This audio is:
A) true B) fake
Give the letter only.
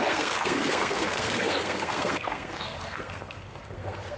B